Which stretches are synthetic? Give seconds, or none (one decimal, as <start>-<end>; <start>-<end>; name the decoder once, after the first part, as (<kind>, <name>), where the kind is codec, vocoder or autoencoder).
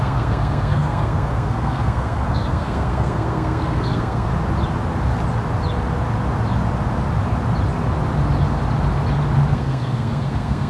0.0-4.3 (codec, SNAC); 9.5-10.7